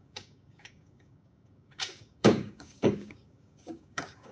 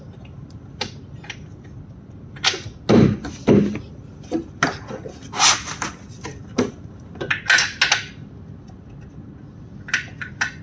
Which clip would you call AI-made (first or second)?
first